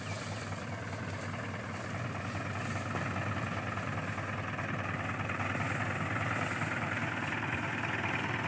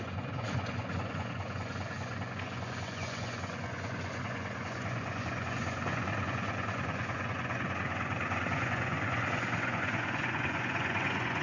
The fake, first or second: second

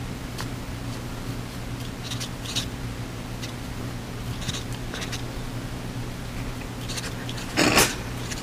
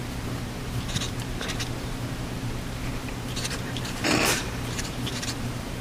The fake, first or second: second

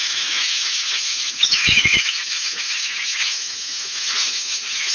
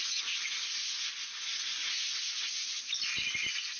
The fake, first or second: first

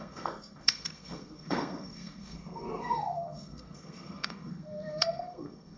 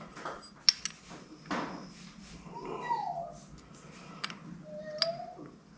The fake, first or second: first